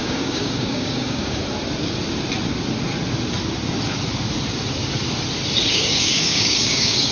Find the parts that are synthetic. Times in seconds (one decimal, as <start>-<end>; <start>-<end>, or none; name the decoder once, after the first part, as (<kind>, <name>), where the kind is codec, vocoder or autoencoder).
0.0-1.4 (codec, DAC); 5.7-7.1